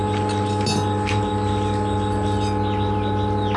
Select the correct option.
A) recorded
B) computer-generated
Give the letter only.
A